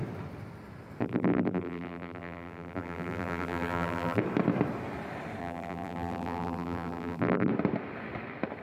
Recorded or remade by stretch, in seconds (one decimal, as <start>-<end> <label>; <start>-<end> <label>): 0.0-1.0 recorded; 1.0-4.2 remade; 4.2-5.4 recorded; 5.4-7.5 remade; 7.5-8.6 recorded